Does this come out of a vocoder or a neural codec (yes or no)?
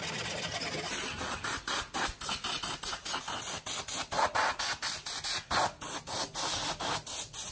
no